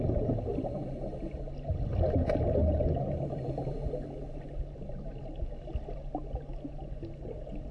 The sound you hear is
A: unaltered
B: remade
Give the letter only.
A